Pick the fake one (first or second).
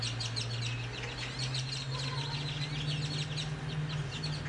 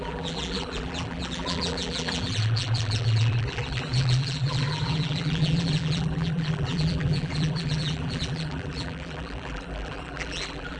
second